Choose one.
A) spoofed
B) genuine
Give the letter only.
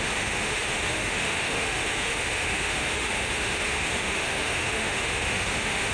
A